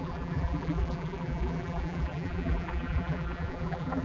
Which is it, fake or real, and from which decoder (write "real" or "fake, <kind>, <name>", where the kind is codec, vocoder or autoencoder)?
fake, vocoder, BigVGAN v2